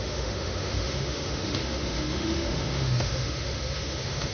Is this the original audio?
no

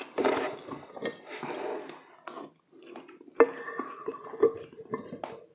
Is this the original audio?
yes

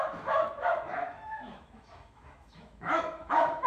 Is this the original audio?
no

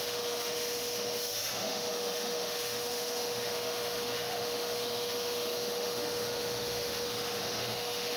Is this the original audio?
no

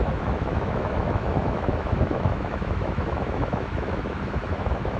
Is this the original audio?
no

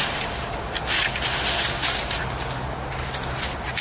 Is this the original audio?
yes